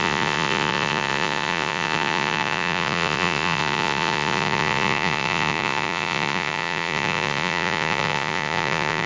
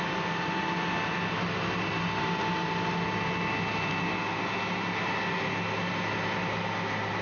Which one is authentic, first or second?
second